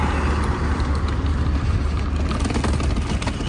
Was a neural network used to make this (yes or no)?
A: no